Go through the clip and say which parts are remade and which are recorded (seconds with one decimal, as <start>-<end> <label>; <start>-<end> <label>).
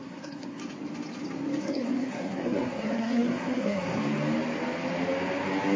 0.0-0.6 remade; 0.6-1.6 recorded; 1.6-4.0 remade; 4.0-5.8 recorded